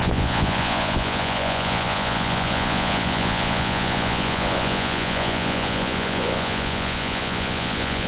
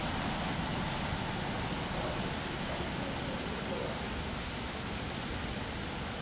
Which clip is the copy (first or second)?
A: first